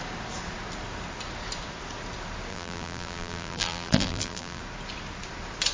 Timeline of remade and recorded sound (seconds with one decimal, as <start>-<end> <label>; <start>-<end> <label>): 0.0-2.5 recorded; 2.5-4.6 remade; 4.6-5.7 recorded